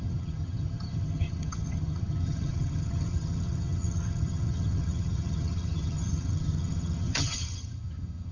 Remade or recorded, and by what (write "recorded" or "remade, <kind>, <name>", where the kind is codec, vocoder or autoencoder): remade, vocoder, HiFi-GAN